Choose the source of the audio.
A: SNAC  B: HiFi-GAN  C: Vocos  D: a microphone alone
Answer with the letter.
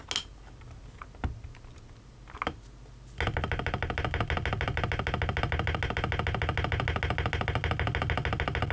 D